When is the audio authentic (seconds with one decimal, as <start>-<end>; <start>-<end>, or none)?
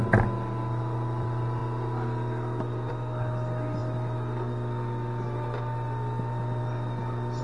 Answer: 0.0-7.4